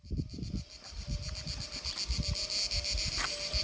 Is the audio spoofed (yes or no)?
no